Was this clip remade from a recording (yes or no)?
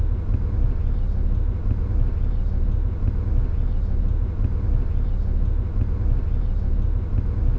no